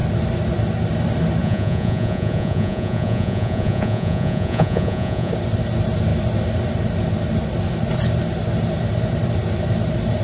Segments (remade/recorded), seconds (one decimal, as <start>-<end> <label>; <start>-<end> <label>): 0.0-1.4 recorded; 1.4-5.3 remade; 5.3-10.2 recorded